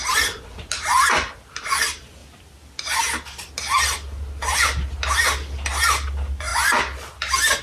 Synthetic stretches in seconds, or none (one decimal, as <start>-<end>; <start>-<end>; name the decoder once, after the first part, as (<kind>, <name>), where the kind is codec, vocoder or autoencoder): none